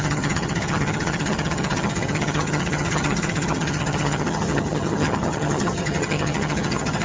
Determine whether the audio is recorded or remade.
remade